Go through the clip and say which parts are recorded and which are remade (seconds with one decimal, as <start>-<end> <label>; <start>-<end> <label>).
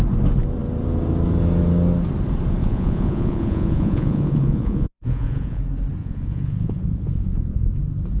0.0-2.6 recorded; 2.6-5.6 remade; 5.6-6.0 recorded; 6.0-7.7 remade; 7.7-8.2 recorded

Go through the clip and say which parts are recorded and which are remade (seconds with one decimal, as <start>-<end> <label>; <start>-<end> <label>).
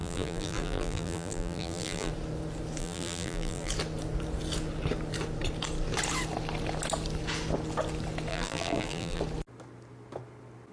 0.0-2.1 remade; 2.1-2.8 recorded; 2.8-3.7 remade; 3.7-8.3 recorded; 8.3-9.2 remade; 9.2-10.7 recorded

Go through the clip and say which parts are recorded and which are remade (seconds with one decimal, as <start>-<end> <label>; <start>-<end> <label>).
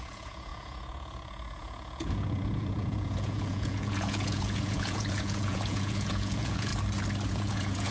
0.0-6.7 remade; 6.7-7.3 recorded; 7.3-7.9 remade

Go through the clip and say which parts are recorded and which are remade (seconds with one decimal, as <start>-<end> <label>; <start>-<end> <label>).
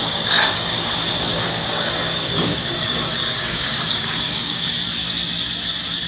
0.0-0.9 remade; 0.9-1.3 recorded; 1.3-4.7 remade; 4.7-6.1 recorded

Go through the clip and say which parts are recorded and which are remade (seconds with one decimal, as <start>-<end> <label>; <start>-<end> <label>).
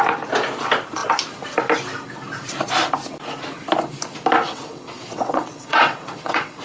0.0-4.4 recorded; 4.4-6.6 remade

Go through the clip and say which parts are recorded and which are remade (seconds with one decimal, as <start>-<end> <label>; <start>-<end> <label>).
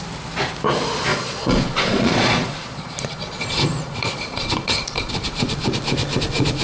0.0-1.1 recorded; 1.1-5.1 remade; 5.1-6.6 recorded